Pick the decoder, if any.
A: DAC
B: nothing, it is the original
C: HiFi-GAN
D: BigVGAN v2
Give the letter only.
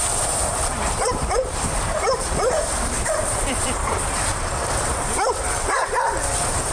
D